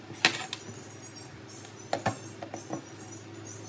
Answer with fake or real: real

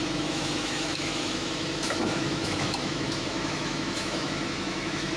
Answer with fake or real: fake